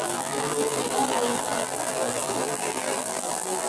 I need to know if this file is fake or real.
fake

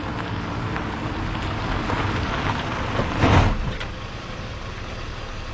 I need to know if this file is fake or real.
real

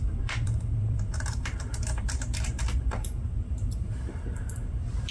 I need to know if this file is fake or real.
fake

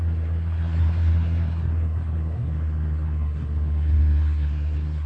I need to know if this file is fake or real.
fake